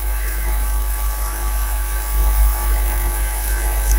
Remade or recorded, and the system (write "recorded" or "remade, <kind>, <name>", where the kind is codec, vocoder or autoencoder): remade, autoencoder, DAC-VAE